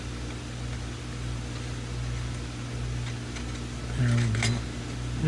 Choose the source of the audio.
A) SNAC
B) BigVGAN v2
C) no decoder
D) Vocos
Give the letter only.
C